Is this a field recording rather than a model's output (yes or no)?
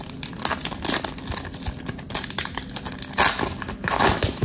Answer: yes